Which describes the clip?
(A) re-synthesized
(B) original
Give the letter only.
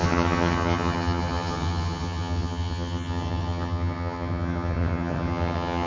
A